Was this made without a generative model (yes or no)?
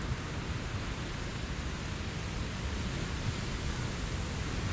yes